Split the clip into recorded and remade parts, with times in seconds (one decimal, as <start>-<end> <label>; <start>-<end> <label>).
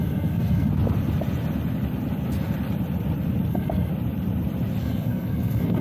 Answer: 0.0-0.7 remade; 0.7-3.5 recorded; 3.5-3.9 remade; 3.9-4.8 recorded; 4.8-5.8 remade